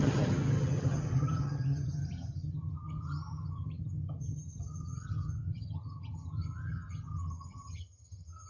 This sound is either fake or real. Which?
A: fake